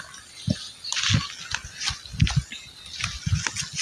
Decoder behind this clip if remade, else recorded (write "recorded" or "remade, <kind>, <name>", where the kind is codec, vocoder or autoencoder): recorded